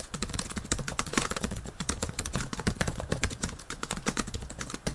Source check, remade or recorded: remade